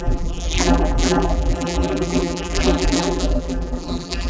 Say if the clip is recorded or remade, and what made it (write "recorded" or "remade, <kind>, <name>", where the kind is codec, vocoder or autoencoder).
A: remade, vocoder, BigVGAN v2